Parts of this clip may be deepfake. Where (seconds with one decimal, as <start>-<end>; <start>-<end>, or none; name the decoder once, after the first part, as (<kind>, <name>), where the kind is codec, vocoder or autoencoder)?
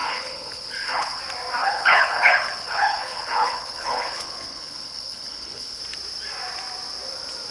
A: 0.0-1.2 (codec, HILCodec); 1.6-5.8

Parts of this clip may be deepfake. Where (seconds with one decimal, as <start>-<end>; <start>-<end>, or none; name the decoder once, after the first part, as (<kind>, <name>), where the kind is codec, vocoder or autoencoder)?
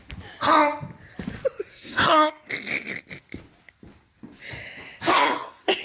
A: 1.7-2.3 (codec, SNAC); 5.1-5.8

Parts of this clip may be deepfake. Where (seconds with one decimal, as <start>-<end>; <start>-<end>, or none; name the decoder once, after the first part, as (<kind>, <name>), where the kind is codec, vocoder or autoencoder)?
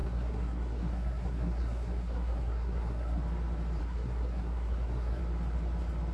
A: 0.0-3.2 (codec, SNAC); 3.8-5.2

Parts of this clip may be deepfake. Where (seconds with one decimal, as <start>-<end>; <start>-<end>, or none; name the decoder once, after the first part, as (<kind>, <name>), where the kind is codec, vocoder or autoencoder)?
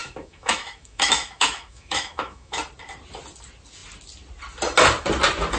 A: 0.0-2.6 (autoencoder, DAC-VAE)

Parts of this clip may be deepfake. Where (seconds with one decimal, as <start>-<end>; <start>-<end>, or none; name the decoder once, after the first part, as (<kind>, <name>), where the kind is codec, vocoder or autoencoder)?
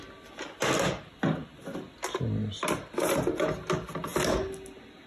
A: none